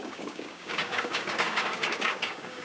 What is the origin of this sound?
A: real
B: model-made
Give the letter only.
B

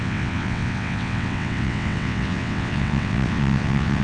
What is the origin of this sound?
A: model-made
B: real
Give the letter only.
A